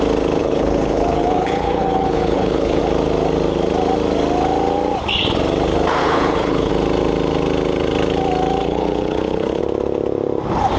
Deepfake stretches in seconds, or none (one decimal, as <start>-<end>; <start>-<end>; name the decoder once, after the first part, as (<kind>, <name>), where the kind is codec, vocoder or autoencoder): 0.4-2.8 (codec, HILCodec); 6.0-6.7; 8.6-9.6